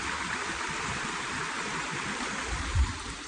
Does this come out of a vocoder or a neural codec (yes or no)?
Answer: yes